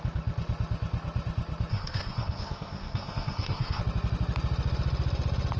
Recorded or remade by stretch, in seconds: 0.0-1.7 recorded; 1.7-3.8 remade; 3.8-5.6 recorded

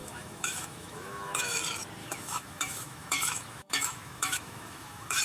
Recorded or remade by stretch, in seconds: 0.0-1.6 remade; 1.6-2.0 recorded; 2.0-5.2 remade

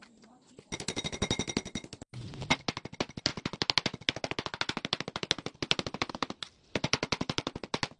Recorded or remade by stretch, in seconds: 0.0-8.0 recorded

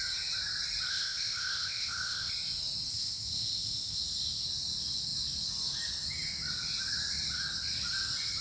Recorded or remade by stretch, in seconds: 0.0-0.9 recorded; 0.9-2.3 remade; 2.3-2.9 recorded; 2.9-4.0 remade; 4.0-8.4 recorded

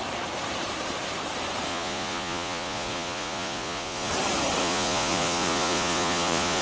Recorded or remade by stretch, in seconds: 0.0-1.7 recorded; 1.7-4.1 remade; 4.1-4.6 recorded; 4.6-6.6 remade

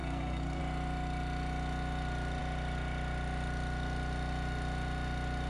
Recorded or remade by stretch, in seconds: 0.0-0.6 remade; 0.6-5.5 recorded

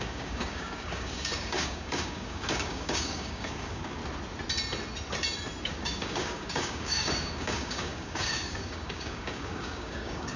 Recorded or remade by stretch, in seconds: 0.0-4.0 remade; 4.0-5.7 recorded; 5.7-10.4 remade